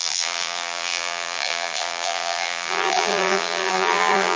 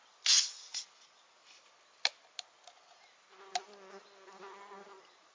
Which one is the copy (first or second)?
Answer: first